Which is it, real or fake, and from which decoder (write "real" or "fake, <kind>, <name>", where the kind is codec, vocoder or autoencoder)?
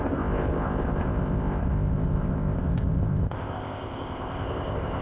fake, codec, ZipCodec